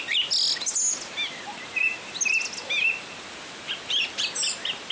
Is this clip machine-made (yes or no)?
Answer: no